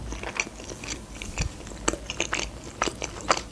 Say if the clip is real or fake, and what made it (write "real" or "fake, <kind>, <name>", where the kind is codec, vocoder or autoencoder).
real